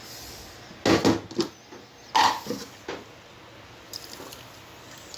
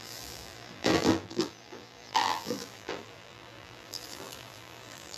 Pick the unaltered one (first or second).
first